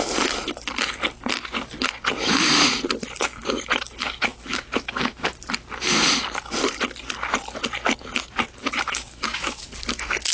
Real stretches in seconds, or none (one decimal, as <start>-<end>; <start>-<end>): 0.0-3.4; 5.3-8.6; 9.6-10.3